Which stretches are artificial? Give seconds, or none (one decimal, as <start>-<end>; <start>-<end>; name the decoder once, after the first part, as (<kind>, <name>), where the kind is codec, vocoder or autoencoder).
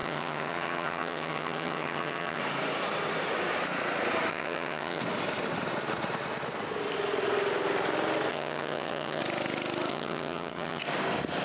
0.0-2.4 (vocoder, HiFi-GAN); 4.3-5.0; 8.3-9.2; 9.9-10.8